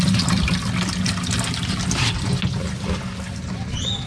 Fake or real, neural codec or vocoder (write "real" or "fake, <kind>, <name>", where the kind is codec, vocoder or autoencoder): real